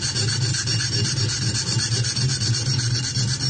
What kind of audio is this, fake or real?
real